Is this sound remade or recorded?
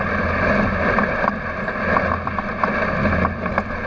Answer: recorded